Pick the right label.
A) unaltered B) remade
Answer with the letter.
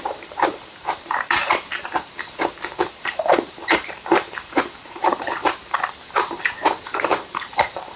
B